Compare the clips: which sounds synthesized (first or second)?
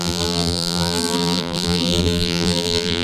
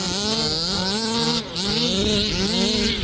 first